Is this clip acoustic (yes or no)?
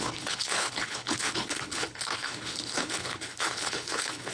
no